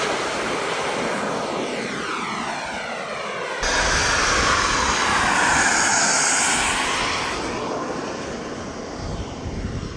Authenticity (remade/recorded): recorded